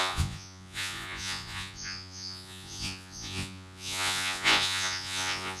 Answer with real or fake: fake